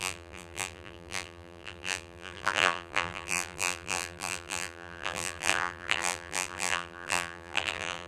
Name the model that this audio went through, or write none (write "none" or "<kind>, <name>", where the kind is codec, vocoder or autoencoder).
vocoder, BigVGAN v2